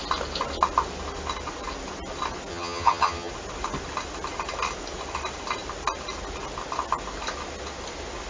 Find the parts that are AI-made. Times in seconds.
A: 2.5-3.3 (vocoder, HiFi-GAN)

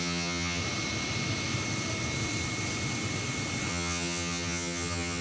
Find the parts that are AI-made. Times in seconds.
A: 0.0-0.6 (vocoder, HiFi-GAN); 3.7-5.2

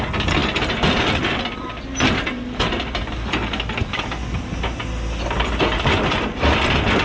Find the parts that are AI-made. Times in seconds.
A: none

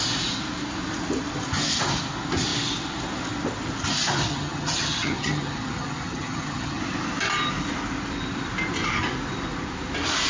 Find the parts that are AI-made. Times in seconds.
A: 4.3-6.8 (vocoder, HiFi-GAN)

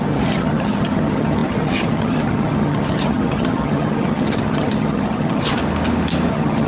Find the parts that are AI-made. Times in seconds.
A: 0.0-5.6 (vocoder, HiFi-GAN); 6.3-6.7

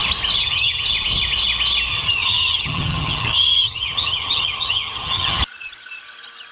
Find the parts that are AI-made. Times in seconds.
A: 0.4-0.9 (vocoder, HiFi-GAN); 1.9-5.4

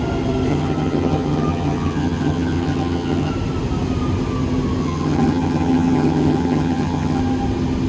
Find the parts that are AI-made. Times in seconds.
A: 0.5-3.3 (vocoder, HiFi-GAN); 4.8-7.2